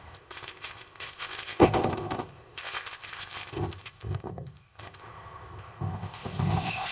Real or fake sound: fake